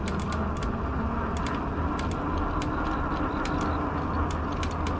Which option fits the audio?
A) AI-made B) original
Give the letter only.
B